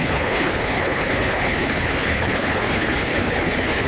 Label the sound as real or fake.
fake